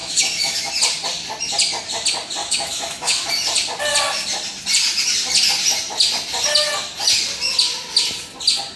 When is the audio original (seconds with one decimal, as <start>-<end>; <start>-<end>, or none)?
0.7-2.4; 3.3-8.8